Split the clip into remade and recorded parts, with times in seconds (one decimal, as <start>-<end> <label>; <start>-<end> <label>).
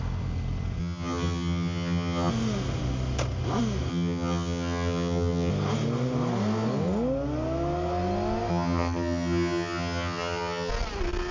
0.0-0.8 recorded; 0.8-2.3 remade; 2.3-3.9 recorded; 3.9-5.5 remade; 5.5-8.5 recorded; 8.5-10.7 remade; 10.7-11.3 recorded